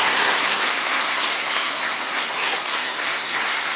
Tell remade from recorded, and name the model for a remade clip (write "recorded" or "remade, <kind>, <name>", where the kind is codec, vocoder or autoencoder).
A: remade, codec, SNAC